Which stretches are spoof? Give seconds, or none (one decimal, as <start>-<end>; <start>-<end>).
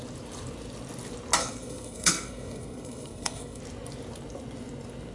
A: 1.4-3.6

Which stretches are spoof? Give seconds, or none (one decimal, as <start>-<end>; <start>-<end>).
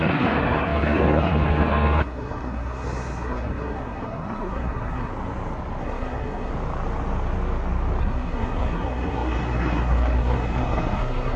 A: 0.0-5.1; 5.8-6.5; 8.0-11.4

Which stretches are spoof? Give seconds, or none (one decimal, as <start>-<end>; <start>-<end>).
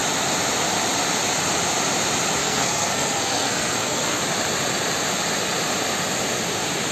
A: 2.4-4.2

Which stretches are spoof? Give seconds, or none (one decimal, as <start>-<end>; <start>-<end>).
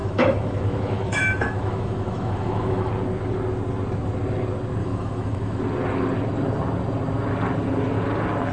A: 0.0-2.9; 4.8-5.6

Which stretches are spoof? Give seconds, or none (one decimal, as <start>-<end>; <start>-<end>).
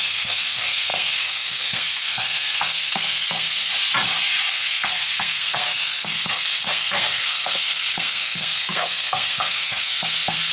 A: 0.0-3.7; 4.5-10.5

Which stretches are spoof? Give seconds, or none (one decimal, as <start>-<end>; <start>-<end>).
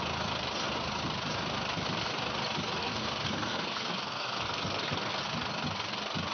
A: 2.8-5.2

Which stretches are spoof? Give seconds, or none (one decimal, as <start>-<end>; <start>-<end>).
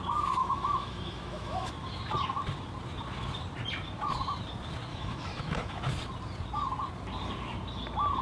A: 0.4-1.7; 4.9-5.8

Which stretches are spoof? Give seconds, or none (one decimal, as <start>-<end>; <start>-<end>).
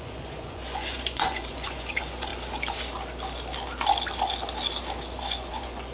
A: 0.0-2.3; 5.2-5.9